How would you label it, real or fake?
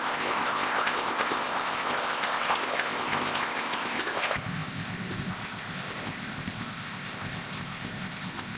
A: fake